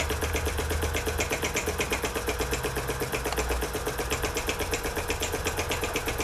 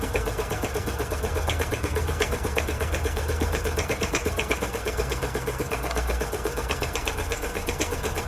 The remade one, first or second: second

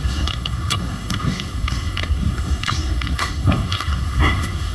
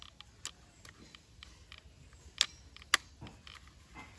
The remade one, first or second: first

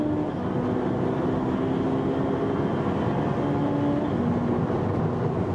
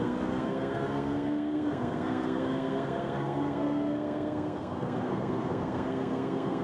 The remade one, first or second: second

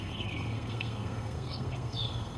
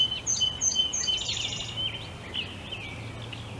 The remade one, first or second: first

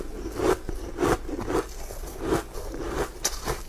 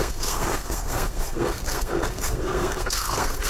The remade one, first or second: second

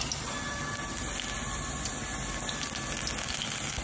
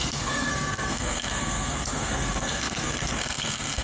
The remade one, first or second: second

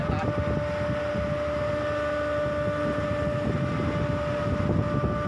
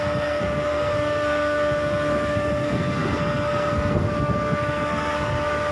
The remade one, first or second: second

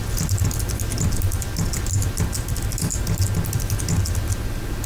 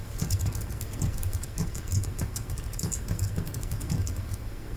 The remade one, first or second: second